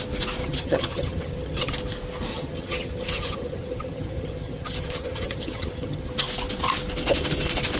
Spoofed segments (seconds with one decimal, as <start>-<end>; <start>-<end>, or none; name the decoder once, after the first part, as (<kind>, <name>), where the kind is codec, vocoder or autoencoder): 0.4-1.7 (vocoder, HiFi-GAN); 2.3-6.1